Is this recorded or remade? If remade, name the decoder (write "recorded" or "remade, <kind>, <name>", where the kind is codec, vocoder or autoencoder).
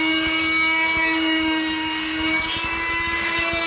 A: remade, codec, DAC